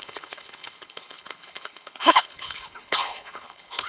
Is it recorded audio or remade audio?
remade